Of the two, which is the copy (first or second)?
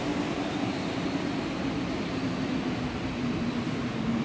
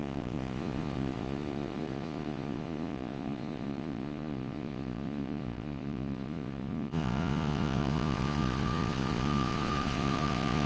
second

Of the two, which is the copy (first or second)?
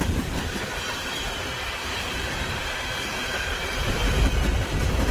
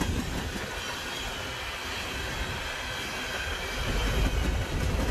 first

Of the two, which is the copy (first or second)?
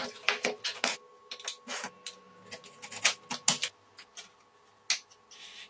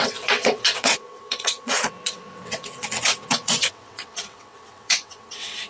second